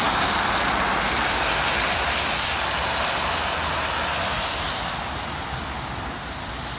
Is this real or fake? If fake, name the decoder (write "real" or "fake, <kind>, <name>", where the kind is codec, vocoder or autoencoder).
real